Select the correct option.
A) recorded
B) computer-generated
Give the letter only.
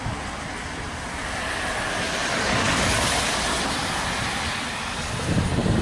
A